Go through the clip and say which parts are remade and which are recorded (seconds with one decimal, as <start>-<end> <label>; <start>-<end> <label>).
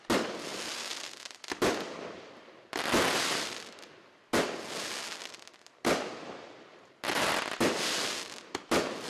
0.0-9.1 recorded